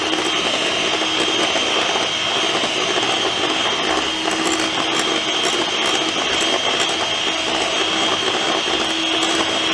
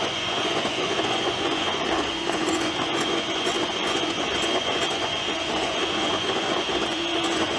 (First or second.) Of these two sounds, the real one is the first